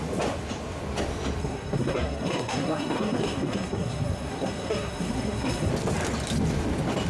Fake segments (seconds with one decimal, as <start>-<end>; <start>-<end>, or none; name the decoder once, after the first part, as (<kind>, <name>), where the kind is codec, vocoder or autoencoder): 1.4-5.7 (codec, SNAC)